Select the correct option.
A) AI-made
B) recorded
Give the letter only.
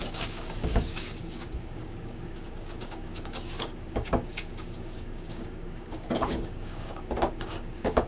A